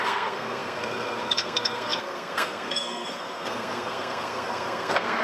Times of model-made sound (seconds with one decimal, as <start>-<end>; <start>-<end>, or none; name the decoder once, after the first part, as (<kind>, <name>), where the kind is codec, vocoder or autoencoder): 0.0-5.2 (codec, SNAC)